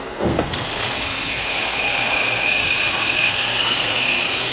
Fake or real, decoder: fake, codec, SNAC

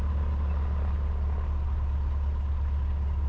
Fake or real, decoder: real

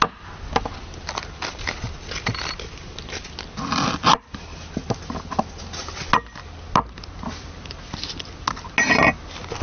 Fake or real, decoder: real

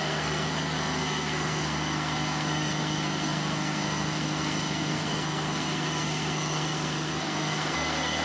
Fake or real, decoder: fake, codec, SNAC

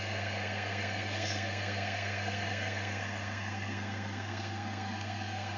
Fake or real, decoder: fake, codec, SNAC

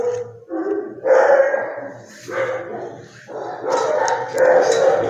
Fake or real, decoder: real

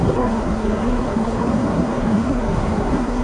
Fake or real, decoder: fake, codec, SNAC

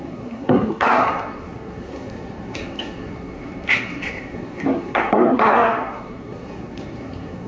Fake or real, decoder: fake, codec, SNAC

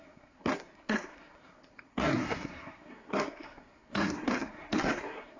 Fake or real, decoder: fake, codec, SNAC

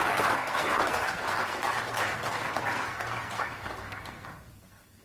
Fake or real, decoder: fake, codec, SNAC